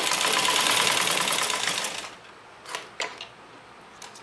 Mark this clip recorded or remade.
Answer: recorded